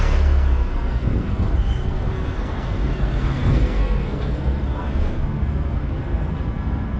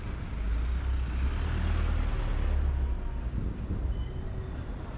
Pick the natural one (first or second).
second